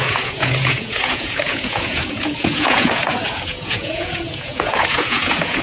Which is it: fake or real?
fake